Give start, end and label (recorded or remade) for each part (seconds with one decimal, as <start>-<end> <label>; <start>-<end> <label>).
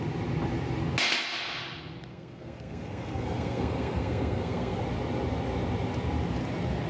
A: 0.0-2.1 recorded; 2.1-4.8 remade; 4.8-6.9 recorded